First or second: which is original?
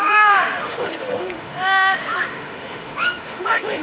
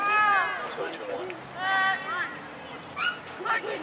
second